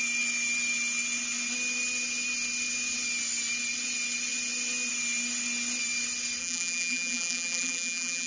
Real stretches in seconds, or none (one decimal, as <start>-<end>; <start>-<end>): 0.0-6.4